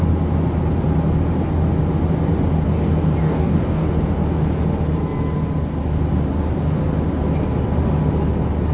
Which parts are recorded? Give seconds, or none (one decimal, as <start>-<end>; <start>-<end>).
0.0-3.2; 3.9-8.7